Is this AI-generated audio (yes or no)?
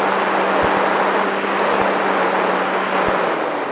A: no